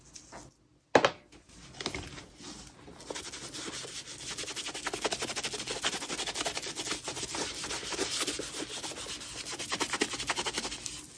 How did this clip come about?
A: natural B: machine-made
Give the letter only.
A